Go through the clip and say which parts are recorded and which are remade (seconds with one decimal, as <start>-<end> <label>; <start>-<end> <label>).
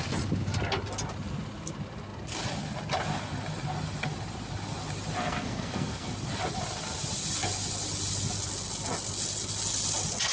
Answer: 0.0-5.2 recorded; 5.2-6.1 remade; 6.1-10.3 recorded